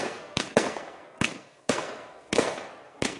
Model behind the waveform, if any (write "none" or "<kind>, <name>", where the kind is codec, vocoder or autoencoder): codec, SNAC